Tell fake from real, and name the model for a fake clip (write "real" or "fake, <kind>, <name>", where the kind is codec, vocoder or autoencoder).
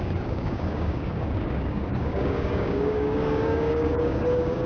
fake, codec, DAC